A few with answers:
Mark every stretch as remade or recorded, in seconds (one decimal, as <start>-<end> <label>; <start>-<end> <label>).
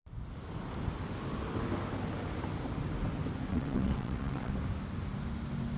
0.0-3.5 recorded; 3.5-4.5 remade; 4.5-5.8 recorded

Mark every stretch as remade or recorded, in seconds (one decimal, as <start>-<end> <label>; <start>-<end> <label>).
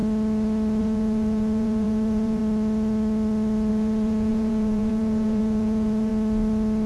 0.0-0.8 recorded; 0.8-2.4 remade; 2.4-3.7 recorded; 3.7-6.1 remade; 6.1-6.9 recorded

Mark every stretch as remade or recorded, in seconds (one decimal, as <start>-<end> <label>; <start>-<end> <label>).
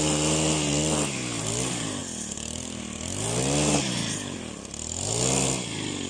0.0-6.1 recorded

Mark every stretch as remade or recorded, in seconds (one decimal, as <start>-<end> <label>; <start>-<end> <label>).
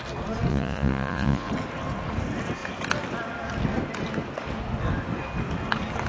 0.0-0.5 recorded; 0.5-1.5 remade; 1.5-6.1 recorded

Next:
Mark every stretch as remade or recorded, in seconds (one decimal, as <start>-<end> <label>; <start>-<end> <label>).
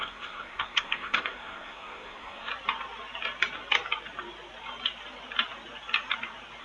0.0-2.5 remade; 2.5-6.6 recorded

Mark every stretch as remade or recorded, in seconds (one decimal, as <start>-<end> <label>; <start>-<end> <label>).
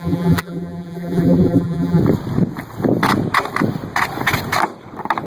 0.0-2.0 remade; 2.0-5.3 recorded